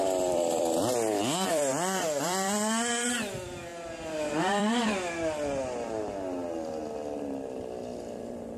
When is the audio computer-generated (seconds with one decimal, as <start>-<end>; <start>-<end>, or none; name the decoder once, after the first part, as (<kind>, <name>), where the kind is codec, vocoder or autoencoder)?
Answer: 0.0-8.6 (vocoder, BigVGAN v2)